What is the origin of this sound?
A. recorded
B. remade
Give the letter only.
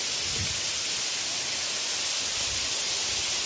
A